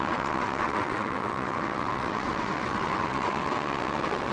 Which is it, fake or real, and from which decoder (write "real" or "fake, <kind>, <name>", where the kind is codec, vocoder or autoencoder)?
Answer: fake, vocoder, WaveNeXt